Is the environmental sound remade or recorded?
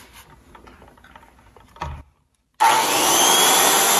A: recorded